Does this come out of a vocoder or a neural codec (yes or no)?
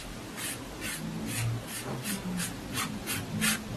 no